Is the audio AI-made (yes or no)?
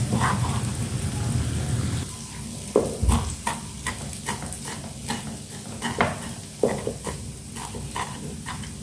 no